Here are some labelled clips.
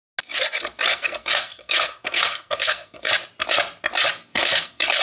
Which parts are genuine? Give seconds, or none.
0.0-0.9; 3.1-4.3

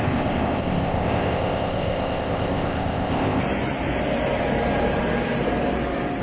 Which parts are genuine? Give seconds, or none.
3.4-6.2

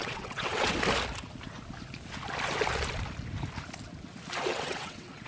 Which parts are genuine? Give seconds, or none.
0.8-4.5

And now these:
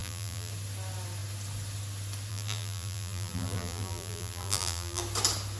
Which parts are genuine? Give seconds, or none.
0.5-2.3; 5.0-5.6